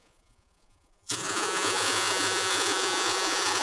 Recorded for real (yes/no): no